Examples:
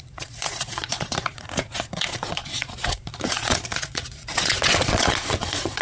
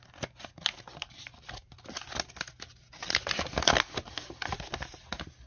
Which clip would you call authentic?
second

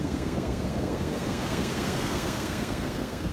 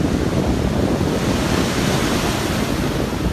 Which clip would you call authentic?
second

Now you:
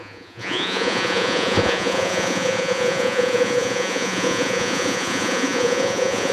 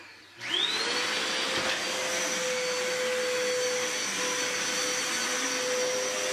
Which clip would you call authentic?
second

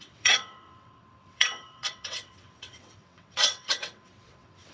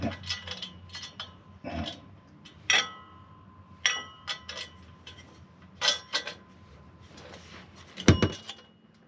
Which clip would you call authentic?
second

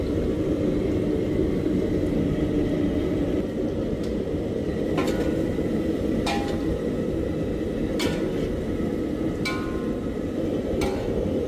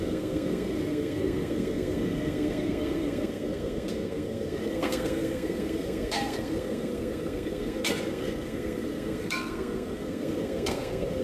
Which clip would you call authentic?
first